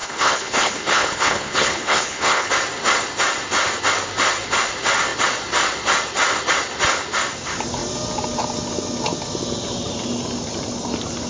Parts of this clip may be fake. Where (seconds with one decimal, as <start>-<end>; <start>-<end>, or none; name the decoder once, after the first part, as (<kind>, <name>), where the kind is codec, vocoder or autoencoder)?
0.0-2.5 (codec, HILCodec)